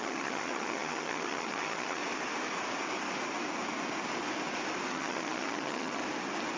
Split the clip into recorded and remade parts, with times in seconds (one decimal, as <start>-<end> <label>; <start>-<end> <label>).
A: 0.0-2.0 remade; 2.0-4.9 recorded; 4.9-6.0 remade; 6.0-6.6 recorded

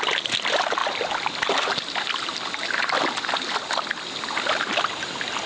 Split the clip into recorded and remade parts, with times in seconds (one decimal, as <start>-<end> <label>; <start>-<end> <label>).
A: 0.0-5.5 recorded

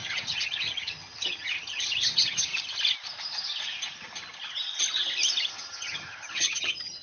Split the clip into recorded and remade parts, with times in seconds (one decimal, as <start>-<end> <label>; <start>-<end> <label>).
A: 0.0-2.5 remade; 2.5-5.5 recorded; 5.5-7.0 remade

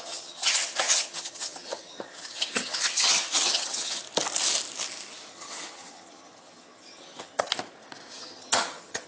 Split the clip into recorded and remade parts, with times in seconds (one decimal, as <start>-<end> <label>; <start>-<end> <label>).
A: 0.0-4.0 remade; 4.0-5.3 recorded; 5.3-7.5 remade; 7.5-8.2 recorded; 8.2-9.1 remade

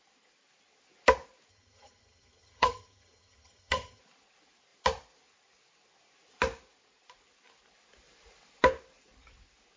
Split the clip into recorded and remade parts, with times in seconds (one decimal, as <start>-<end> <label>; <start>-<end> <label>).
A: 0.0-1.5 recorded; 1.5-4.0 remade; 4.0-9.8 recorded

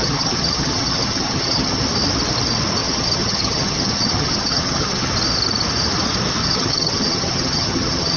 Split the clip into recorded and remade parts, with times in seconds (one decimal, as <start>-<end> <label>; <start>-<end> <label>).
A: 0.0-1.8 remade; 1.8-2.8 recorded; 2.8-5.1 remade; 5.1-6.4 recorded; 6.4-8.2 remade